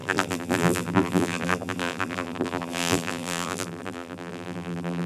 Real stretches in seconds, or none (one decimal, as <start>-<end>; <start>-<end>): none